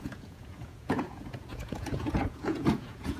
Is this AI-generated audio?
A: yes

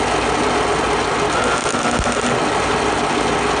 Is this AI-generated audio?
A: no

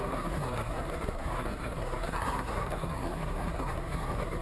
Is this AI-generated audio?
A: yes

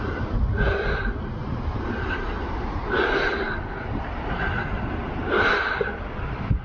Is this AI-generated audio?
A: no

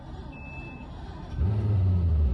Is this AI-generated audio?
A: no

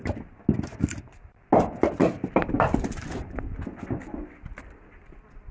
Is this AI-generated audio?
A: no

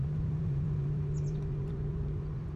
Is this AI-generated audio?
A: yes